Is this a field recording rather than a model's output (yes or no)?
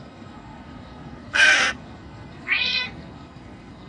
no